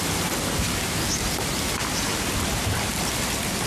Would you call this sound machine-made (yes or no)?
no